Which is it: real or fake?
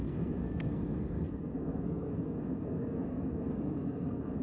fake